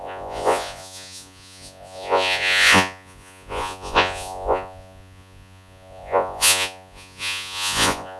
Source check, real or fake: fake